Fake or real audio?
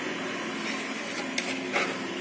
real